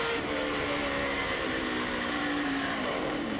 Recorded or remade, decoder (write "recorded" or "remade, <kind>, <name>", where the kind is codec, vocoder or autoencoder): remade, vocoder, BigVGAN v2